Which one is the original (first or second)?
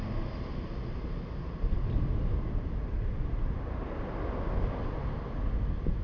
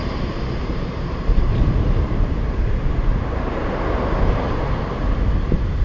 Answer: first